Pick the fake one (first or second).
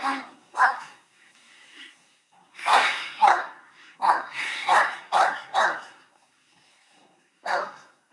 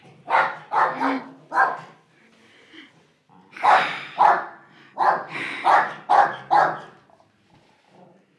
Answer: first